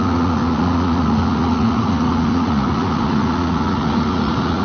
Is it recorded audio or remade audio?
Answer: remade